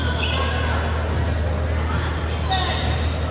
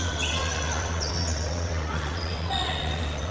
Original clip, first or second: first